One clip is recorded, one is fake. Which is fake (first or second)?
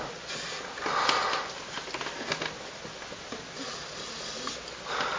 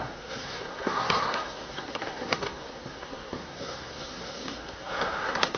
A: second